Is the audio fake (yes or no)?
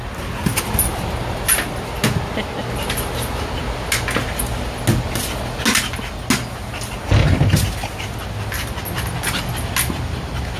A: no